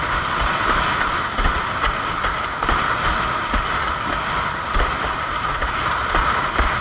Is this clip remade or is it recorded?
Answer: recorded